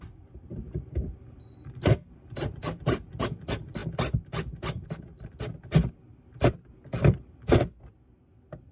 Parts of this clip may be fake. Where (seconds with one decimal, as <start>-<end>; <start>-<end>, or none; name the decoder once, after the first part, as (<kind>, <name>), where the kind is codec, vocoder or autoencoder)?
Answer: 0.0-8.7 (vocoder, BigVGAN v2)